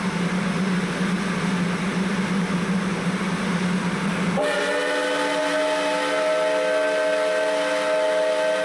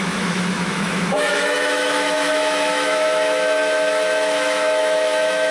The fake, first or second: second